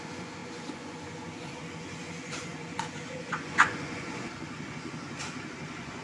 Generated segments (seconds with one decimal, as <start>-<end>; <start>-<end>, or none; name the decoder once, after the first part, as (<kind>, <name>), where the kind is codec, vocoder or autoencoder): 0.0-6.0 (vocoder, Vocos)